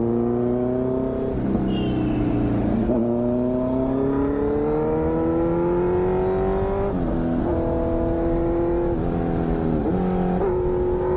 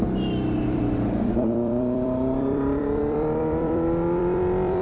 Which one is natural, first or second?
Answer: first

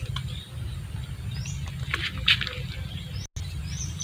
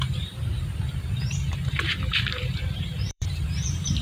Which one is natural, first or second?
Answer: first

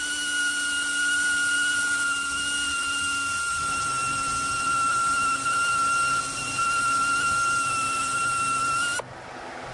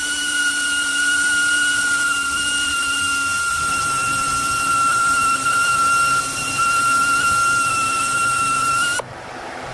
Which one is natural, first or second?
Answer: first